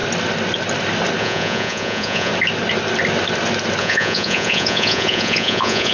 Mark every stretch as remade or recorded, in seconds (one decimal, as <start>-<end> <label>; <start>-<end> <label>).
0.0-1.2 recorded; 1.2-2.3 remade; 2.3-3.8 recorded; 3.8-5.9 remade